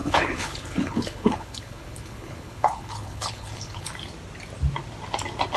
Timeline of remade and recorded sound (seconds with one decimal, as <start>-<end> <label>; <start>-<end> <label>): 0.0-3.9 remade; 3.9-5.6 recorded